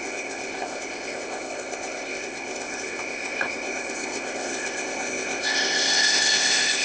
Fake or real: fake